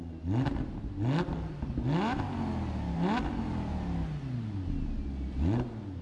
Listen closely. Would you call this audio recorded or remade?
recorded